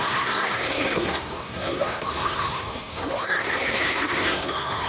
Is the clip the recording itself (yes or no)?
no